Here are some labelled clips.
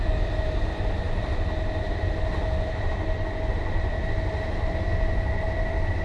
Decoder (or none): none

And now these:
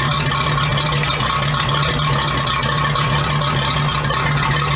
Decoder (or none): none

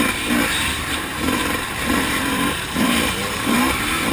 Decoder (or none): vocoder, BigVGAN v2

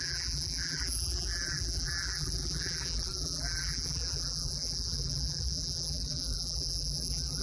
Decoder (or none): vocoder, BigVGAN v2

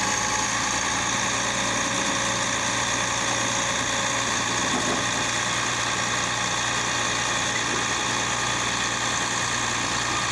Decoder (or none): none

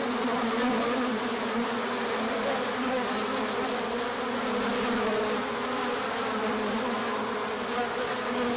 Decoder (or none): none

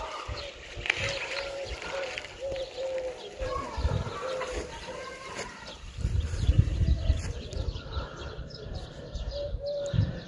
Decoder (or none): vocoder, BigVGAN v2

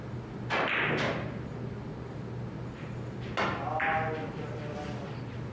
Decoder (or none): none